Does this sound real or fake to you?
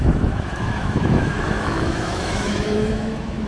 fake